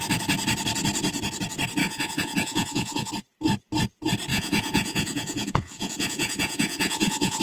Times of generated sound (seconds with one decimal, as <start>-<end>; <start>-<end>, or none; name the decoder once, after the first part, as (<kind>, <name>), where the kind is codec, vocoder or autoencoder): 1.8-3.1 (vocoder, Vocos); 4.3-7.4